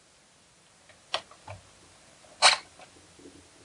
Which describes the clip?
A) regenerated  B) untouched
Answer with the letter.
B